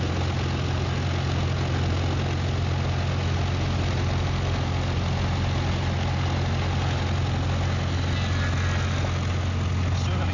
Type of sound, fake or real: real